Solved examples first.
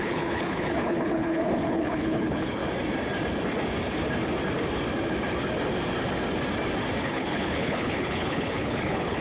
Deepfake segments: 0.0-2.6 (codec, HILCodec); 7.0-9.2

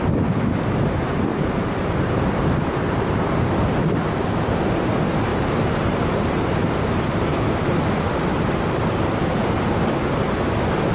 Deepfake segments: 1.3-4.6 (vocoder, BigVGAN v2); 5.3-9.6

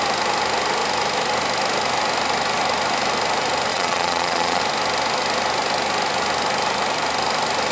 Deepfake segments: 3.7-4.6 (vocoder, Vocos)

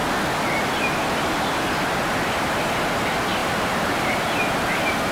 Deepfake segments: 3.4-4.1 (vocoder, BigVGAN v2)